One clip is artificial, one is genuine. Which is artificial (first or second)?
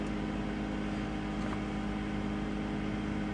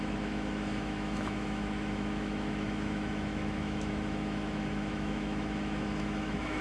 second